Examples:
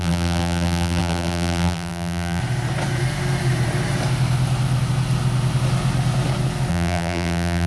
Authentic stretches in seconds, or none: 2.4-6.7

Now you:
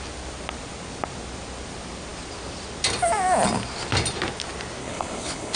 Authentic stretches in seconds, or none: 0.0-4.8

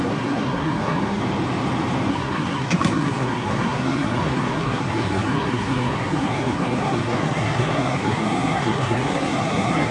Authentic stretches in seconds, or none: 1.2-2.1

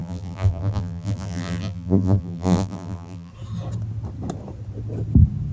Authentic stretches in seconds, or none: 3.3-5.5

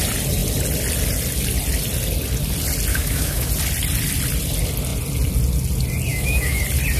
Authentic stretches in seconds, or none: 0.0-2.9; 3.5-6.1; 6.6-7.0

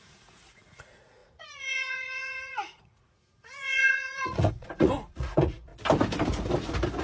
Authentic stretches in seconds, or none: 5.7-7.0

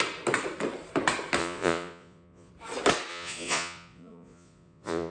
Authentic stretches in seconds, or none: 0.0-1.4; 2.5-3.1

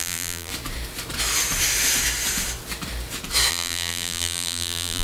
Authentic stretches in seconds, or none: 0.5-3.5